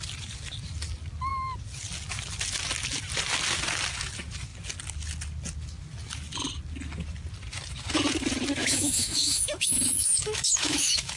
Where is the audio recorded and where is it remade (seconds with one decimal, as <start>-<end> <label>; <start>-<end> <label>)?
0.0-8.6 recorded; 8.6-11.2 remade